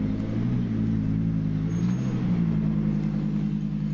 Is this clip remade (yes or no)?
no